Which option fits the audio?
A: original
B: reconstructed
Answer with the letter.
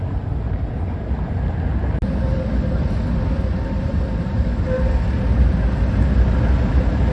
A